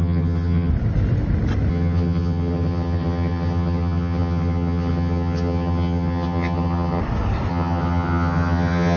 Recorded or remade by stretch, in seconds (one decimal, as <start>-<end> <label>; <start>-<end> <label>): 0.0-0.7 remade; 0.7-1.7 recorded; 1.7-7.0 remade; 7.0-7.5 recorded; 7.5-9.0 remade